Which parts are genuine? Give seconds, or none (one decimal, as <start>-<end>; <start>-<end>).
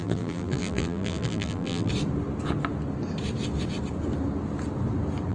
1.9-5.3